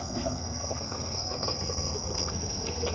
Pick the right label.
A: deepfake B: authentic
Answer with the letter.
A